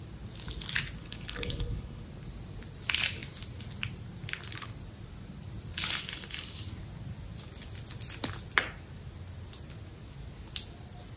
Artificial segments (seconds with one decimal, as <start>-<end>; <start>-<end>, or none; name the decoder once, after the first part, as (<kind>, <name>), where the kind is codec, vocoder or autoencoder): 1.0-2.0 (codec, HILCodec)

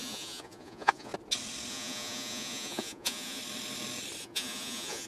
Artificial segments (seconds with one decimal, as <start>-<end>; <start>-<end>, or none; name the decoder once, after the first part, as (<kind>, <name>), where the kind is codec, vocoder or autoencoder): 0.0-1.1 (vocoder, Vocos); 1.7-3.4; 4.2-5.1

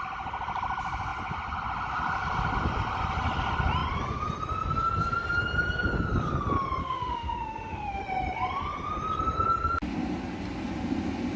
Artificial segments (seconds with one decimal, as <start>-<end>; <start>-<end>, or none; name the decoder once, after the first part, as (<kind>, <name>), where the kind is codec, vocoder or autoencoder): 6.8-8.0 (autoencoder, DAC-VAE)

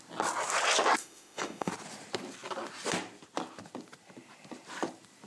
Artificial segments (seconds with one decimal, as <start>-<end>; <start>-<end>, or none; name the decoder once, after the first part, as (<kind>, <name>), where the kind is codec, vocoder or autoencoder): 1.0-1.7 (autoencoder, DAC-VAE)

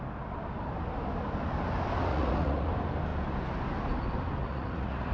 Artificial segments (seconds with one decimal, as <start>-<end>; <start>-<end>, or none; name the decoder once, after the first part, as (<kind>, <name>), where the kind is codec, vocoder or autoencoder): 2.1-2.7 (vocoder, Vocos); 4.4-5.1